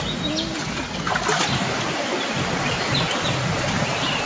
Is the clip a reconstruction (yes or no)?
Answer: no